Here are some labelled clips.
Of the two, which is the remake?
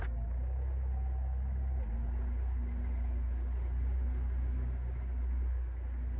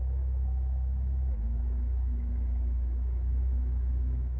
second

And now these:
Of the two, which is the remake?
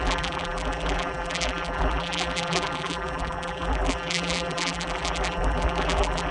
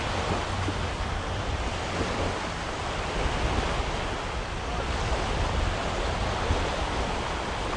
first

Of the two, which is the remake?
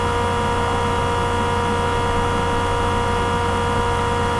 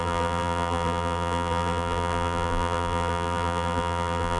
second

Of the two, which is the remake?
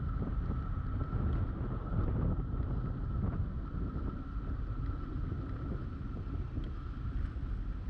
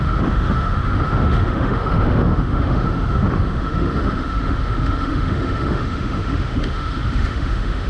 second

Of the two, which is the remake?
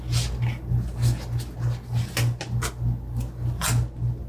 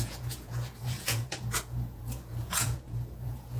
second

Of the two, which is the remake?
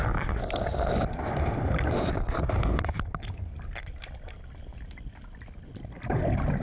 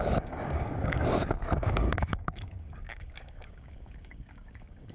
second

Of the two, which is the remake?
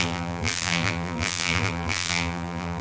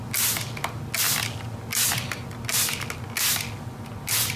first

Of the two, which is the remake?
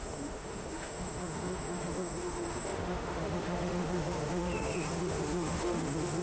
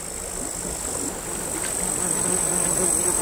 first